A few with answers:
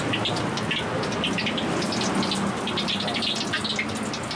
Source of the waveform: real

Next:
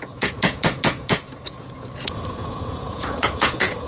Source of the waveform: fake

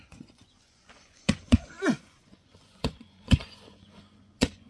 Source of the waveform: fake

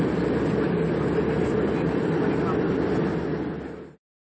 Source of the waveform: real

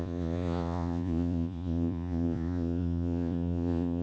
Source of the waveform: fake